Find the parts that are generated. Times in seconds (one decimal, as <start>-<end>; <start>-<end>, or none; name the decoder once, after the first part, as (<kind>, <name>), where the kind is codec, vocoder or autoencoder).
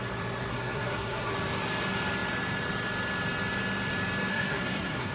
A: 0.5-1.3 (codec, SNAC); 4.3-5.1